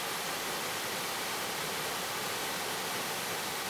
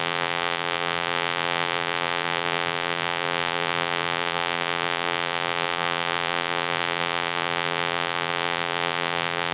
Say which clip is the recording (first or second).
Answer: first